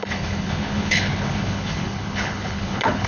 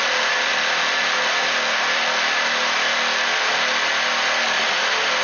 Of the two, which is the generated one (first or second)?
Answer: first